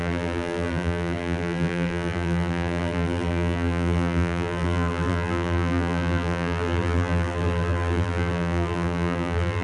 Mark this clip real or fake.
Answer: fake